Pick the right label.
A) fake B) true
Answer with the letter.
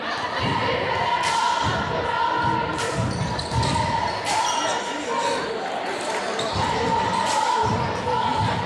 A